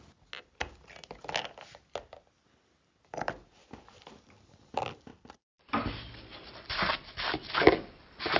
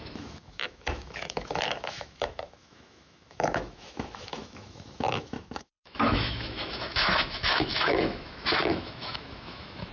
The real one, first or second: first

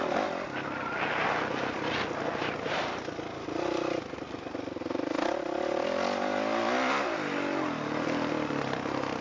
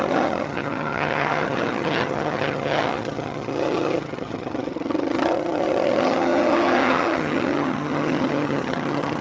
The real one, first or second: first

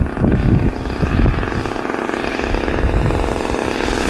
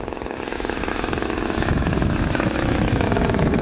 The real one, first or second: first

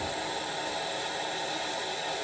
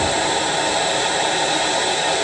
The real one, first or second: first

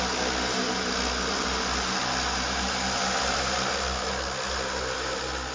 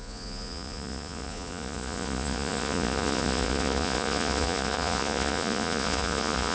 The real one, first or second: first